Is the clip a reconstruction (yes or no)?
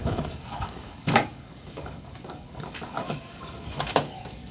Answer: yes